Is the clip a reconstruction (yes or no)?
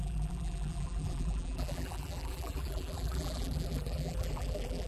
yes